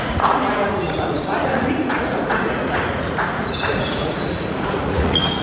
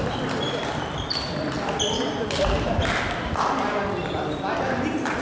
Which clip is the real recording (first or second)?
second